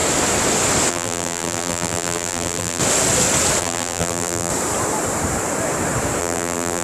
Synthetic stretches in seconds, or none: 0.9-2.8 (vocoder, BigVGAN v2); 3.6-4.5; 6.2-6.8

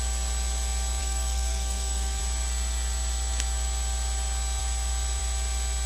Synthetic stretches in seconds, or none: 1.0-2.2 (codec, SNAC)

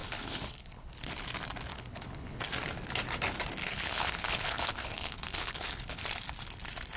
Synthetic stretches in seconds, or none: 0.0-1.1 (codec, HILCodec); 1.7-2.4; 3.6-6.0

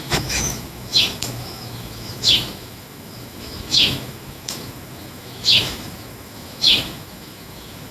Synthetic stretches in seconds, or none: 0.0-7.9 (autoencoder, DAC-VAE)

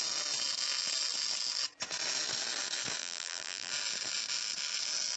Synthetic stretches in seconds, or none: 3.0-3.7 (vocoder, BigVGAN v2)